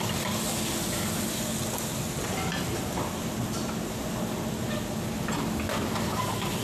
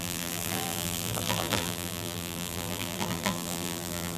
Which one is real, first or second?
first